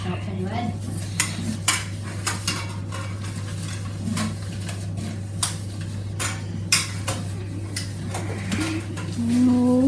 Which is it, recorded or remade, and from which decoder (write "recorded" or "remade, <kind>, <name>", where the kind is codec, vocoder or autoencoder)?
recorded